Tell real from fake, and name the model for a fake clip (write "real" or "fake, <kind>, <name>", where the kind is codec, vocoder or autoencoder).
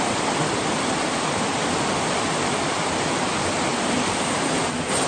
real